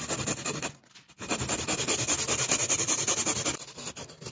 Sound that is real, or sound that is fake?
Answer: real